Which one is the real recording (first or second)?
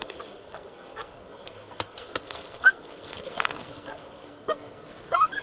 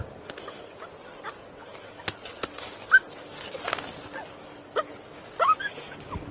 second